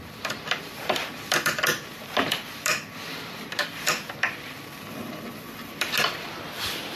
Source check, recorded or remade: remade